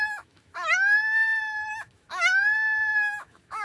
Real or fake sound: fake